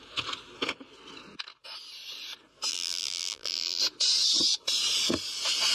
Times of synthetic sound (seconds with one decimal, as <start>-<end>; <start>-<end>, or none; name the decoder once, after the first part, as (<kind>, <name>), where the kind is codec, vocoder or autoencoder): 2.7-3.8 (vocoder, BigVGAN v2)